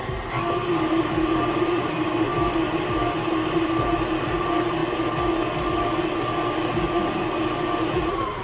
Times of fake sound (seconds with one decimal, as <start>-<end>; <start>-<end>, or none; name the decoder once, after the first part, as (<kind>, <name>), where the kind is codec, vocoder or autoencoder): 0.0-2.3 (vocoder, BigVGAN v2); 3.5-4.8; 7.9-8.4